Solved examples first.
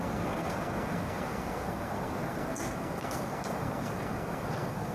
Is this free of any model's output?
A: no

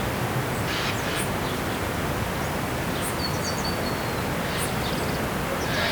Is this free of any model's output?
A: yes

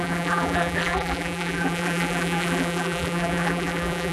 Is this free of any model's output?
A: no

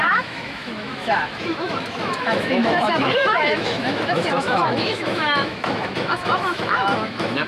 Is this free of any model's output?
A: no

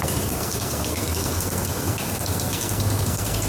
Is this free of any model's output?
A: no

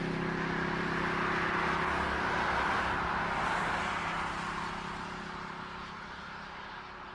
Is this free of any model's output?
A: yes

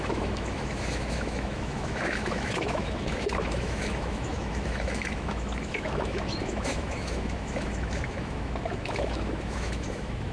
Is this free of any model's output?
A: no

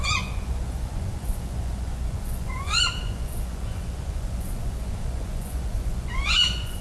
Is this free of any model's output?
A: no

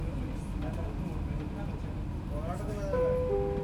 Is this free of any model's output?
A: yes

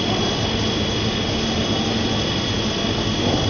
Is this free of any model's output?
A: yes